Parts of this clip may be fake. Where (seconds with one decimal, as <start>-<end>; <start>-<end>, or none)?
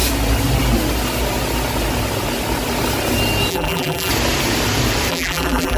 3.5-4.1; 5.1-5.8